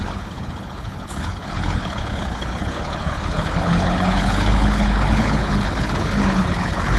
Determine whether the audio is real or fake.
fake